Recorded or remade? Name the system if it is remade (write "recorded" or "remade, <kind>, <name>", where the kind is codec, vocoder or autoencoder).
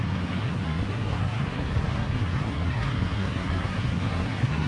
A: remade, codec, SNAC